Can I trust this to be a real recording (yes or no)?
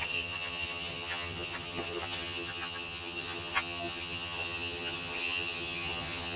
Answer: no